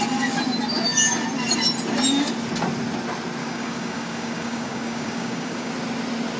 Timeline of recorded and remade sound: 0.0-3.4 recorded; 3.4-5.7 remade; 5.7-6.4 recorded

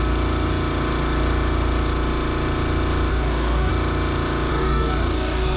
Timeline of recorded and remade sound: 0.0-3.1 recorded; 3.1-3.7 remade; 3.7-4.5 recorded; 4.5-5.6 remade

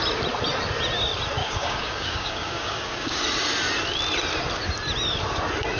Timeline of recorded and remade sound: 0.0-1.4 recorded; 1.4-3.2 remade; 3.2-5.8 recorded

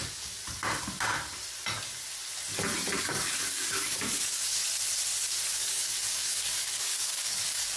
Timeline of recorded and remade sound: 0.0-0.4 remade; 0.4-3.0 recorded; 3.0-4.6 remade; 4.6-5.5 recorded; 5.5-7.8 remade

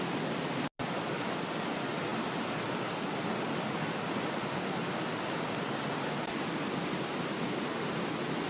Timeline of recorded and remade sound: 0.0-8.5 recorded

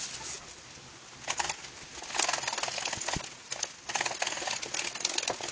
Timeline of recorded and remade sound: 0.0-5.5 recorded